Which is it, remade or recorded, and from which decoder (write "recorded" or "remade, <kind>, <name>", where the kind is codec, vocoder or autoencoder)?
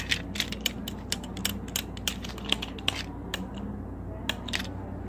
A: recorded